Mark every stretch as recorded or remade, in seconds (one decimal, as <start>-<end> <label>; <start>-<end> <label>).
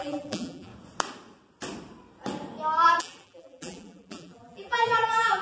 0.0-0.7 remade; 0.7-3.0 recorded; 3.0-5.4 remade